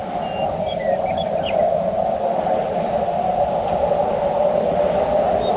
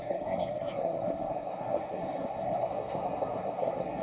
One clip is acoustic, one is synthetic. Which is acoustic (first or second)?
first